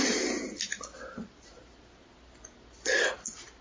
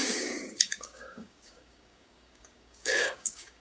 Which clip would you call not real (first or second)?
second